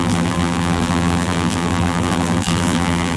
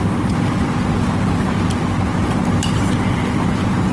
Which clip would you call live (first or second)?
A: second